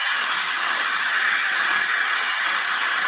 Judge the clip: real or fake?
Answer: fake